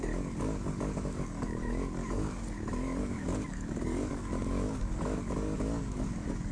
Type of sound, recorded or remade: remade